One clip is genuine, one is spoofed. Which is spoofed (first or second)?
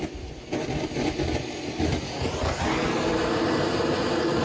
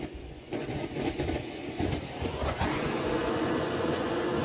second